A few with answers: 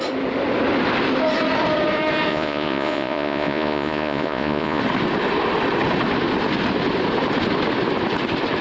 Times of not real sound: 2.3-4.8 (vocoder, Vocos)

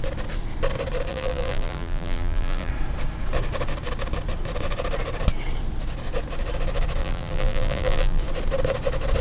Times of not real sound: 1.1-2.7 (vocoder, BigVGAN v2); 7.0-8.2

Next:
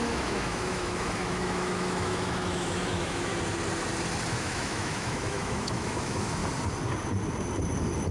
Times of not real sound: 0.0-3.3 (autoencoder, DAC-VAE); 4.3-6.4

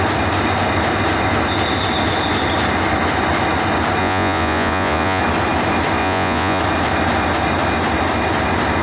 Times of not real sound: 4.0-5.2 (vocoder, Vocos); 6.0-6.6

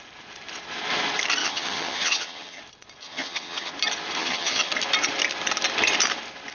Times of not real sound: 1.4-2.6 (vocoder, HiFi-GAN); 3.0-3.7; 4.2-4.7

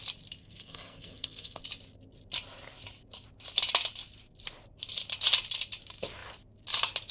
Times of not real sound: 0.4-1.6 (codec, SNAC)

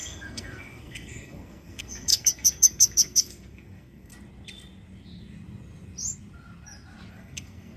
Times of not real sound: 0.0-4.1 (codec, SNAC); 7.1-7.8

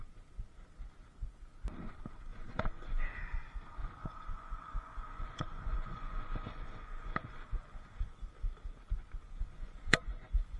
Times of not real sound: 2.3-3.1 (vocoder, Vocos); 3.8-8.3; 9.2-10.6